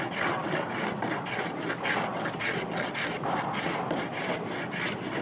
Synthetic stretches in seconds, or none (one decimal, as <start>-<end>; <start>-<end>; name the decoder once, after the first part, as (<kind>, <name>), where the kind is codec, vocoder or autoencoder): none